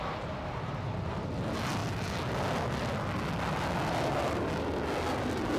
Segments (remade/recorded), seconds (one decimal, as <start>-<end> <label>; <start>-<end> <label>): 0.0-5.6 recorded